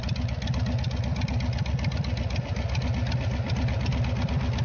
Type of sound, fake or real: real